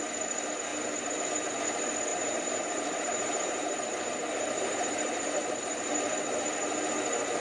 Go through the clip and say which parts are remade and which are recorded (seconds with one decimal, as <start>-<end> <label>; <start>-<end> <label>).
0.0-2.1 recorded; 2.1-5.9 remade; 5.9-7.4 recorded